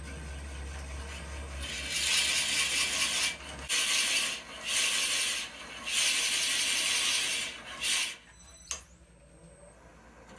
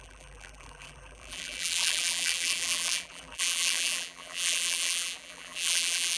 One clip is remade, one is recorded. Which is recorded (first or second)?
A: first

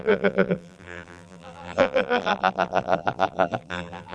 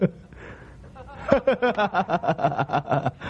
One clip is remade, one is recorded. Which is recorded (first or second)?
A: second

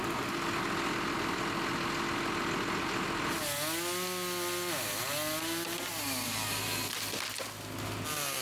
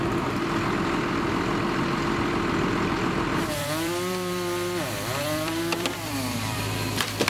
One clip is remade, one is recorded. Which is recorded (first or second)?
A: first